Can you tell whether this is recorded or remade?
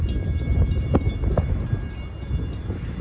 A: recorded